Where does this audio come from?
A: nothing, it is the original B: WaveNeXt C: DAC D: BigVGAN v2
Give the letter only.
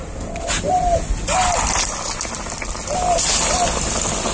A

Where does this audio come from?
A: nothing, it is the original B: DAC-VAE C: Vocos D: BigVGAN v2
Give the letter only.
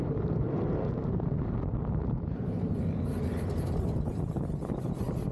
D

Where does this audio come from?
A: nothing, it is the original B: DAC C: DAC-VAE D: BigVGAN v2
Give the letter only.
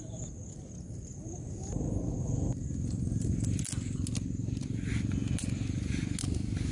A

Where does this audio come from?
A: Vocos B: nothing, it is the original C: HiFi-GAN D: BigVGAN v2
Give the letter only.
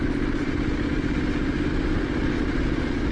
B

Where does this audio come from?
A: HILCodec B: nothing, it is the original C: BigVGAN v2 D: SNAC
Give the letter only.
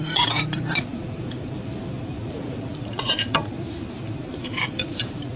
C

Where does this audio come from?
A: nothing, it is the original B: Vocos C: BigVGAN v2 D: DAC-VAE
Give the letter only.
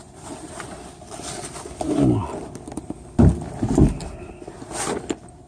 A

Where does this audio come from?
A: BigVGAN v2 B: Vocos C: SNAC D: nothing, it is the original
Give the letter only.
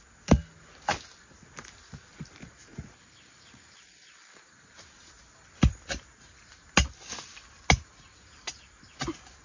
D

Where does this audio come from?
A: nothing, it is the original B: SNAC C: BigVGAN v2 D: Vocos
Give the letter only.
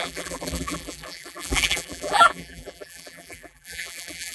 C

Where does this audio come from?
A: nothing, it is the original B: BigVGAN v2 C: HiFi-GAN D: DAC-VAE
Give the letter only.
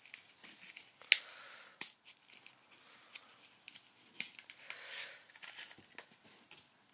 A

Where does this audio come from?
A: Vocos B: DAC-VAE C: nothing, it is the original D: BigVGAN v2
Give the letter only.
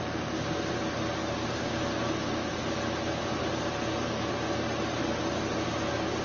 C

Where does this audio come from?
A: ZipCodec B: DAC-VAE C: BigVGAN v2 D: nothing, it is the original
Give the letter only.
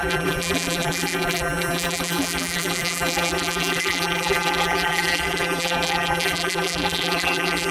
C